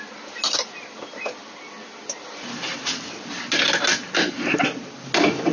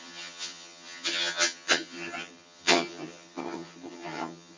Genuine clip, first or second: first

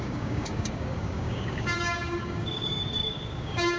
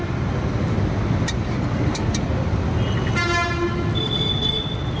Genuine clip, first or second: second